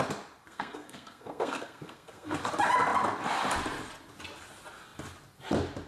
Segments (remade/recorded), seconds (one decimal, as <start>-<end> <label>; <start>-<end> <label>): 0.0-0.4 recorded; 0.4-2.4 remade; 2.4-5.9 recorded